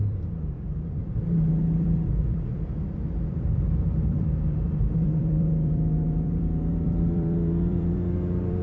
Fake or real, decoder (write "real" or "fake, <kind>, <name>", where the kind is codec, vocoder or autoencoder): fake, vocoder, BigVGAN v2